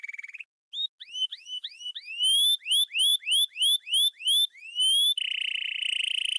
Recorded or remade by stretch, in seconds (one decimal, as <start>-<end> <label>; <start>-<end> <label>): 0.0-1.3 recorded; 1.3-1.9 remade; 1.9-6.4 recorded